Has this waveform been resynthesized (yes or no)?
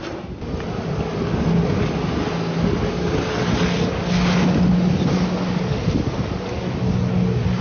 no